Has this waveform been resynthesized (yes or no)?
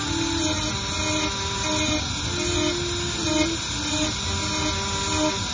no